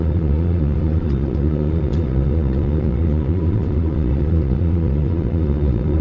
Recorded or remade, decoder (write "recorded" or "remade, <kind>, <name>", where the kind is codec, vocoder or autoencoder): remade, vocoder, Vocos